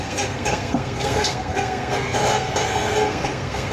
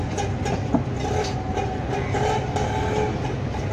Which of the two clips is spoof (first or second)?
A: first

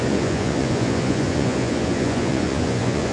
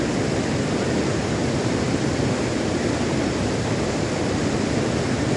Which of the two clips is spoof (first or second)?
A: first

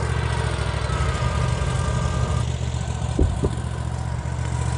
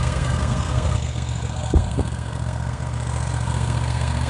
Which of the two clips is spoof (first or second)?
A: second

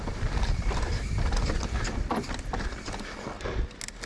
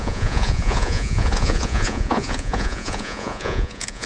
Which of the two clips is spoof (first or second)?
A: second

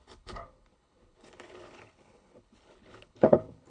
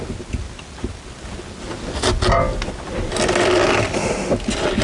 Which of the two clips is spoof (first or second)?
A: first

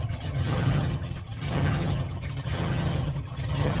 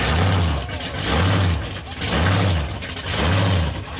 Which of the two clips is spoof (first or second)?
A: first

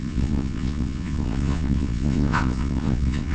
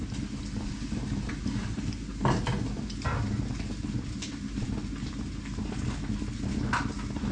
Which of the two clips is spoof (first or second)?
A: first